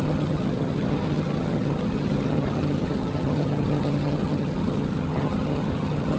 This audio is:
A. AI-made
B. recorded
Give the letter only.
A